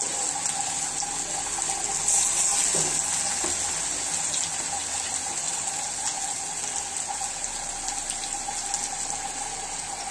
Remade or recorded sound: recorded